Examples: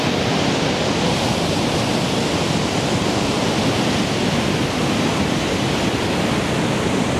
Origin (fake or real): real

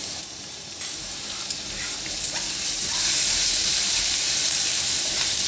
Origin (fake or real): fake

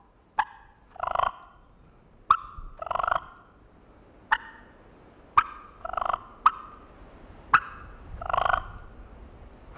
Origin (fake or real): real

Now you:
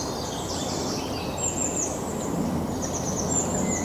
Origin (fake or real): real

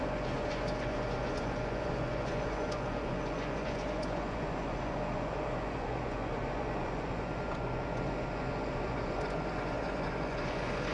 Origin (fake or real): fake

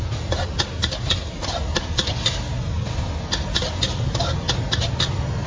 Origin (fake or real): real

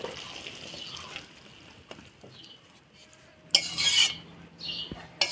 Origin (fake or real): real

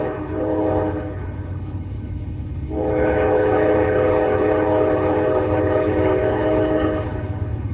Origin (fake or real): fake